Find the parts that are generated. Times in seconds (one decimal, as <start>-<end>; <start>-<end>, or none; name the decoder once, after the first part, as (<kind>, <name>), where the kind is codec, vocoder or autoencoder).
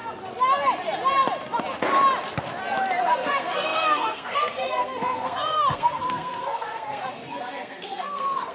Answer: 3.0-8.5 (codec, SNAC)